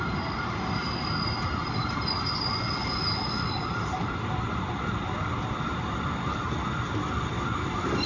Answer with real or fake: real